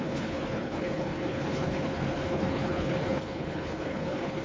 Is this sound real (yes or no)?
no